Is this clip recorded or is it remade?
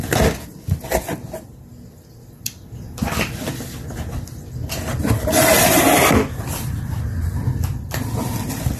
remade